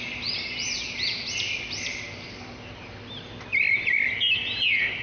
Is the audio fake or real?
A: real